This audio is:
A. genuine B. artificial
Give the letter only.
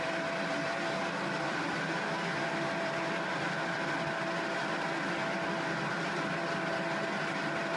B